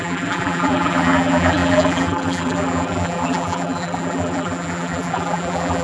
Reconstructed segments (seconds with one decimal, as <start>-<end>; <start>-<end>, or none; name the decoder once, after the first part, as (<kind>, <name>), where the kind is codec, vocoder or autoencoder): 0.0-5.8 (vocoder, BigVGAN v2)

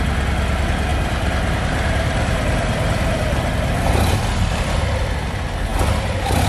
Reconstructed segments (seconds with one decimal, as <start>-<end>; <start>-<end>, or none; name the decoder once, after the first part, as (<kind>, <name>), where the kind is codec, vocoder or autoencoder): 0.9-4.8 (vocoder, BigVGAN v2)

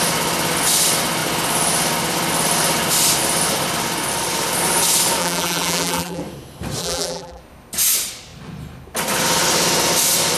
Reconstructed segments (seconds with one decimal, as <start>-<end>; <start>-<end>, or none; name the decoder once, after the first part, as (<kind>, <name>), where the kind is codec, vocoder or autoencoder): 5.2-6.2 (vocoder, BigVGAN v2); 6.8-7.4

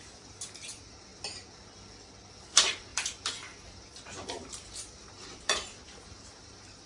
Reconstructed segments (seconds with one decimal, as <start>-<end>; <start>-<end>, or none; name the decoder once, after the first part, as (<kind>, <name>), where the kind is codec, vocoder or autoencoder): 0.0-1.1 (vocoder, BigVGAN v2); 2.4-6.9

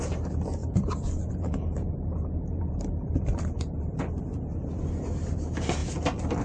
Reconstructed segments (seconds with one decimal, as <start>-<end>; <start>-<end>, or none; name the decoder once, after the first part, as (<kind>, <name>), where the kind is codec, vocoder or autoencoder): 0.0-3.9 (vocoder, BigVGAN v2); 5.0-5.8

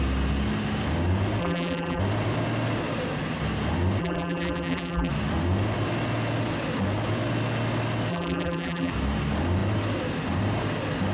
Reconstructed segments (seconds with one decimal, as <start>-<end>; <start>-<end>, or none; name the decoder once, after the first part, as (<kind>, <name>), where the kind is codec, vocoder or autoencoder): 1.4-2.0 (vocoder, BigVGAN v2); 4.0-5.1; 8.1-8.9

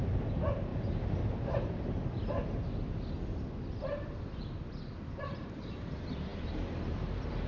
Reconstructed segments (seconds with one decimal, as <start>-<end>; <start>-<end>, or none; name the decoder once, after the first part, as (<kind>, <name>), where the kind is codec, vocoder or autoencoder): 0.0-0.7 (vocoder, BigVGAN v2); 5.2-7.5

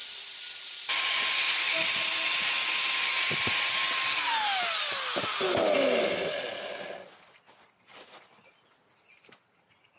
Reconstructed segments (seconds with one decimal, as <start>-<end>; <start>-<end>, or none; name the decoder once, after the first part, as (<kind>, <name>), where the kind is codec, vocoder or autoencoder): 0.0-4.6 (vocoder, BigVGAN v2)